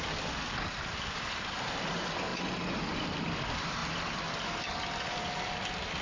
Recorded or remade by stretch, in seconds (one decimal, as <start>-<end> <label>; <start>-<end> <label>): 0.0-6.0 recorded

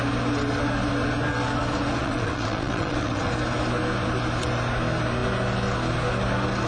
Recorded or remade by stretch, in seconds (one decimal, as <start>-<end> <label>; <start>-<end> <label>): 0.0-2.0 recorded; 2.0-3.3 remade; 3.3-6.7 recorded

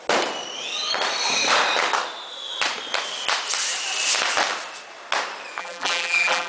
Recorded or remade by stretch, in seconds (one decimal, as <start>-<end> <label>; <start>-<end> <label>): 0.0-5.6 recorded; 5.6-6.5 remade

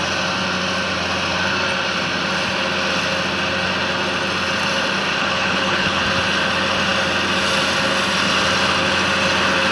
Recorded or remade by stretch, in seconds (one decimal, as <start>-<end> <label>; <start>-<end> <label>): 0.0-5.2 recorded; 5.2-6.0 remade; 6.0-9.7 recorded

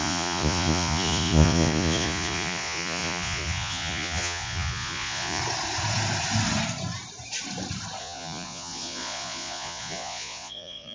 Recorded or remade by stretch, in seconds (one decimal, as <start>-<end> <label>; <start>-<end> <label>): 0.0-5.4 remade; 5.4-8.0 recorded; 8.0-10.9 remade

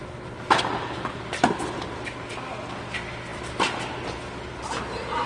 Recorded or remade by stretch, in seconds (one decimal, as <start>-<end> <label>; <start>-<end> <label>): 0.0-5.3 recorded

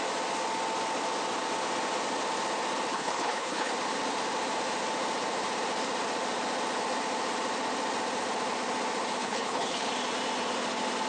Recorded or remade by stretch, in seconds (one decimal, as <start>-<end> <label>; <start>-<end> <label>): 0.0-2.9 recorded; 2.9-3.7 remade; 3.7-9.2 recorded; 9.2-9.9 remade; 9.9-11.1 recorded

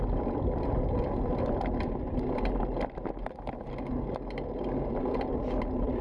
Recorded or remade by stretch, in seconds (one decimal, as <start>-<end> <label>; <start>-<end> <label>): 0.0-1.3 remade; 1.3-4.9 recorded; 4.9-6.0 remade